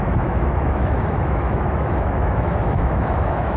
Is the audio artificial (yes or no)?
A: yes